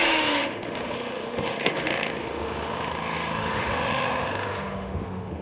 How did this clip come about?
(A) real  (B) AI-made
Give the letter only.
B